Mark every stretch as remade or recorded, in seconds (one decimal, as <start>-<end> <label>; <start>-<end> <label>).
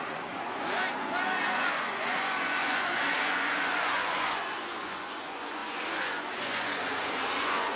0.0-7.8 remade